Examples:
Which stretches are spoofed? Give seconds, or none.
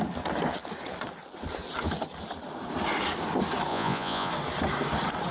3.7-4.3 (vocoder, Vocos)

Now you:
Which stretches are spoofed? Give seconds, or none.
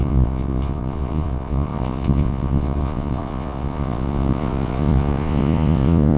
0.0-6.2 (vocoder, Vocos)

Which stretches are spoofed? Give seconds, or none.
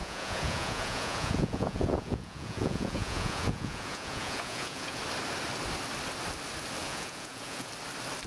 0.0-5.0 (vocoder, Vocos); 6.8-7.7